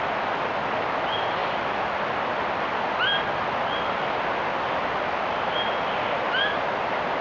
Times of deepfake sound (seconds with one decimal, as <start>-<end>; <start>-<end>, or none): none

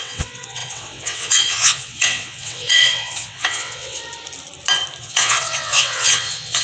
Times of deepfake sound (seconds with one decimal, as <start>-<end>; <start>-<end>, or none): 0.0-4.0; 5.0-6.6